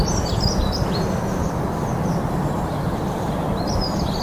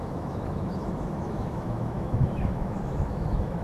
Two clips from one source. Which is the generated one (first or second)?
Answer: second